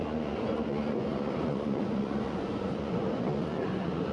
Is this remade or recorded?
remade